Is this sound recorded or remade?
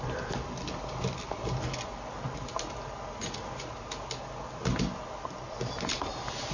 recorded